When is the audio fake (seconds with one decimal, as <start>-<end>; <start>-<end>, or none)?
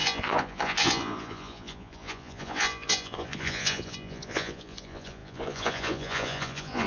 0.0-6.9